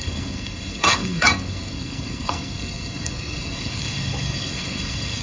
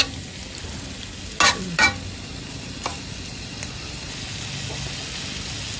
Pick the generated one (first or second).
first